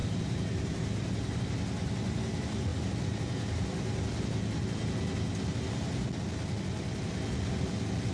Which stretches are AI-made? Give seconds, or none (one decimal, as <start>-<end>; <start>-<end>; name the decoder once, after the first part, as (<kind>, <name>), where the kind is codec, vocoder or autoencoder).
0.0-1.4 (vocoder, BigVGAN v2)

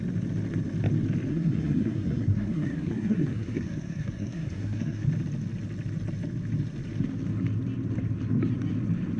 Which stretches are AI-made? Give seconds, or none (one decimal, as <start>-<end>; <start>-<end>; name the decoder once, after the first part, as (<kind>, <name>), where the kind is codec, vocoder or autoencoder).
1.3-5.1 (codec, SNAC)

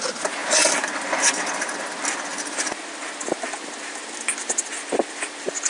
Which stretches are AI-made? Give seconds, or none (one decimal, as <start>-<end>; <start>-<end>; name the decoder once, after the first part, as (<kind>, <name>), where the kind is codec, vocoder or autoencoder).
none

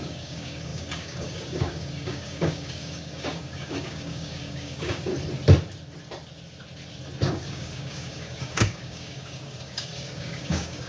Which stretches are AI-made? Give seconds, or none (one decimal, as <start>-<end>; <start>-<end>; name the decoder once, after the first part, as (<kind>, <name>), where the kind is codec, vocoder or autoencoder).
0.0-5.1 (codec, DAC); 7.3-10.9

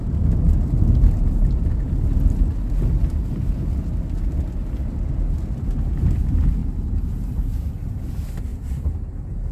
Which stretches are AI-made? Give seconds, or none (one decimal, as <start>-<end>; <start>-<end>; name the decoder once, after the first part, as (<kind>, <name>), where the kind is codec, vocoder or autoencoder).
none

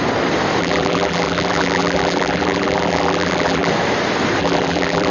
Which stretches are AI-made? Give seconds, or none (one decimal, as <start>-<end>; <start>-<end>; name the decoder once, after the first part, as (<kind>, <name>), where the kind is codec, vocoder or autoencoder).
0.6-3.7 (vocoder, BigVGAN v2); 4.4-5.1

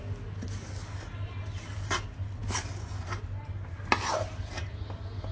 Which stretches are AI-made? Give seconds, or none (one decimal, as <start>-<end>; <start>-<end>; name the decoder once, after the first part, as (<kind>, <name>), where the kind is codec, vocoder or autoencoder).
none

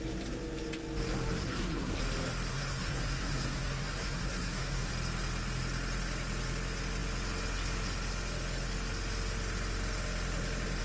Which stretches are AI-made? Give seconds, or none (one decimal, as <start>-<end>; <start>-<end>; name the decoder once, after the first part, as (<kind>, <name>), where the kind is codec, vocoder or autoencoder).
1.4-2.0 (codec, SNAC); 2.5-4.9